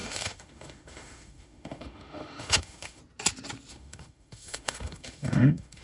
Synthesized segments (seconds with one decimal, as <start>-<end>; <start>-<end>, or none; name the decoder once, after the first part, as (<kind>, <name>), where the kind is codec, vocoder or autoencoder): 0.0-3.0 (autoencoder, DAC-VAE); 3.7-5.8